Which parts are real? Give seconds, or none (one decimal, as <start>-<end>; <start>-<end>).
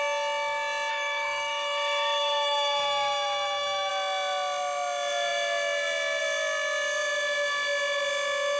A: 0.0-0.9; 3.9-8.6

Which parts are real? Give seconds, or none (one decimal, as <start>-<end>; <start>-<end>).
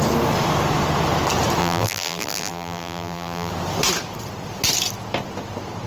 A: 0.0-1.6; 3.5-5.9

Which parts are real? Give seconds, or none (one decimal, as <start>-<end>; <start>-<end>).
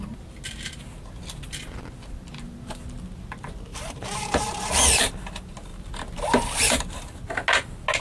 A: 0.0-3.7; 5.1-5.7; 7.2-8.0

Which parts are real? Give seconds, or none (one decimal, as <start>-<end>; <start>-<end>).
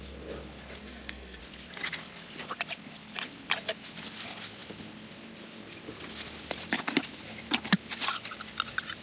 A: 0.0-0.8; 1.4-9.0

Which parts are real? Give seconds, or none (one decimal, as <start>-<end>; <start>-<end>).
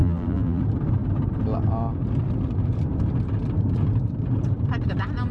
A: 0.6-5.3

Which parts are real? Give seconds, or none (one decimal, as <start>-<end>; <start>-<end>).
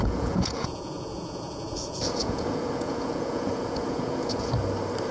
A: 4.6-5.1